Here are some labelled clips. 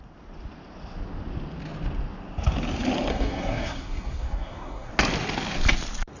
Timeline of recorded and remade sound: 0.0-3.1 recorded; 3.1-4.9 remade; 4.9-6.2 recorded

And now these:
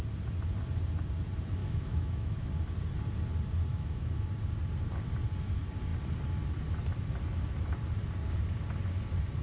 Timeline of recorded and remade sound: 0.0-1.6 recorded; 1.6-2.5 remade; 2.5-3.7 recorded; 3.7-4.3 remade; 4.3-9.4 recorded

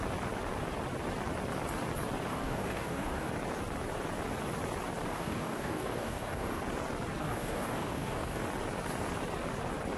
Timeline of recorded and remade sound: 0.0-2.3 recorded; 2.3-3.3 remade; 3.3-5.1 recorded; 5.1-6.6 remade; 6.6-7.2 recorded; 7.2-8.4 remade; 8.4-10.0 recorded

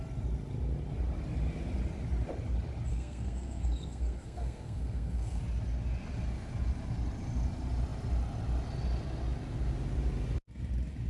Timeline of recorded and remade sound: 0.0-2.9 recorded; 2.9-5.4 remade; 5.4-11.1 recorded

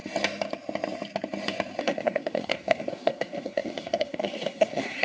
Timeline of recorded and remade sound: 0.0-1.8 recorded; 1.8-5.0 remade